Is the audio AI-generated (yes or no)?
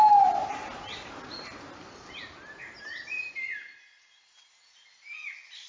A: no